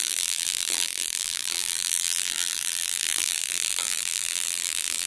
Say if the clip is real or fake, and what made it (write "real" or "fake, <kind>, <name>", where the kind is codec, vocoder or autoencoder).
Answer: fake, vocoder, BigVGAN v2